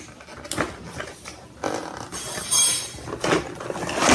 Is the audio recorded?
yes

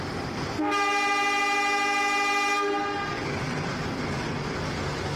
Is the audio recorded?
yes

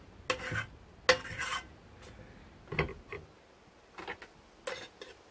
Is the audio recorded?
yes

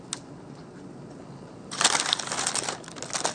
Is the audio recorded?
yes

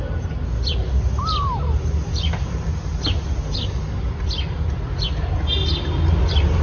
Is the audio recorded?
yes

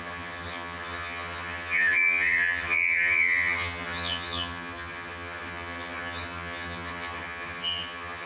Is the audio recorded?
no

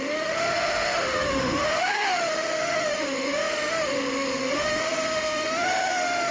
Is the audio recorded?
no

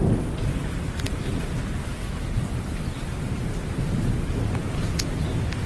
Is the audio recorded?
yes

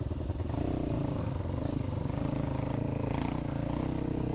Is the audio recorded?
yes